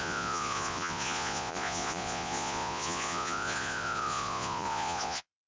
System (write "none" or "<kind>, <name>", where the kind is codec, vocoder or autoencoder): vocoder, Vocos